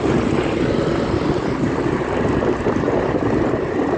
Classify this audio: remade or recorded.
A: remade